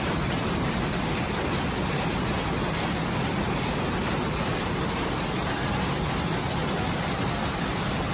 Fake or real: real